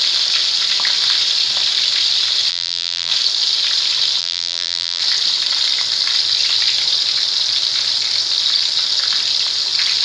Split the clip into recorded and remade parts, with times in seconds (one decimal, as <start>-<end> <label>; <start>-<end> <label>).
0.0-2.5 recorded; 2.5-3.1 remade; 3.1-4.2 recorded; 4.2-5.0 remade; 5.0-10.0 recorded